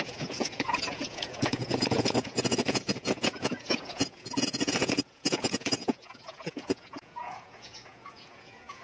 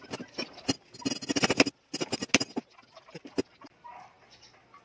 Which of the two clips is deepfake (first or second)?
first